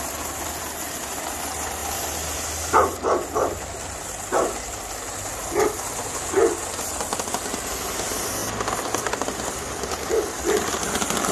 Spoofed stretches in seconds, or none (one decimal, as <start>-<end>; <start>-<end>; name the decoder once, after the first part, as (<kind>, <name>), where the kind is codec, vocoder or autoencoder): none